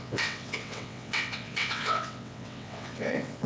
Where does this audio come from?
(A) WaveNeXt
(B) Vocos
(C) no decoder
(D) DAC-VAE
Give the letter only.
A